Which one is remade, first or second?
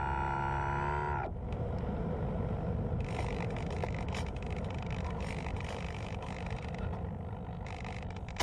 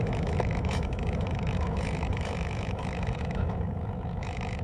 second